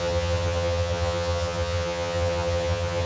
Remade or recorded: remade